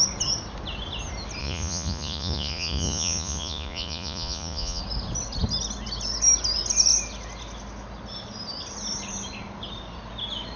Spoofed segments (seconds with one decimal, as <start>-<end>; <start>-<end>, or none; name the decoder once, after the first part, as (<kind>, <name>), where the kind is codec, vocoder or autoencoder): 1.4-4.8 (vocoder, Vocos)

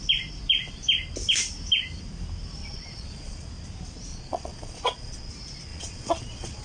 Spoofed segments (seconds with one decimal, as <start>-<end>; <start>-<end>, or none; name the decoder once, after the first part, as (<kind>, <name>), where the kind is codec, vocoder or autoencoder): 2.6-3.5 (vocoder, Vocos); 4.1-5.3; 5.7-6.6